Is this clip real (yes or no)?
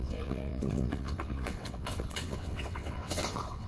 no